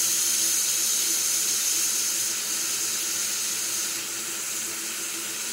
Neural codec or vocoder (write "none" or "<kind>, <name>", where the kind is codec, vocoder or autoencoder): none